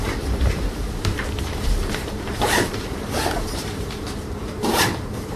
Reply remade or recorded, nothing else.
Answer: remade